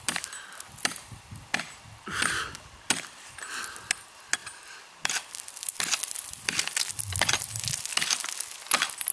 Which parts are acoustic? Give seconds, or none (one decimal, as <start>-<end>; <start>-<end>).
0.0-9.1